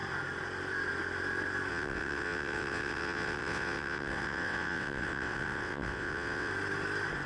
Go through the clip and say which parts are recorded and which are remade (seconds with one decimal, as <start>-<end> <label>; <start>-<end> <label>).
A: 0.0-1.7 recorded; 1.7-6.5 remade; 6.5-7.3 recorded